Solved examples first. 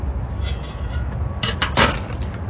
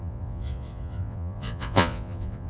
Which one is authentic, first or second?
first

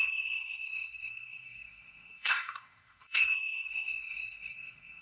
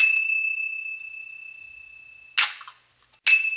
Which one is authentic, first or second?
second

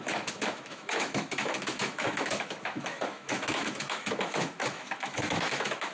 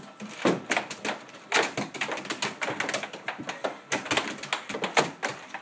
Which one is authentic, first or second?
second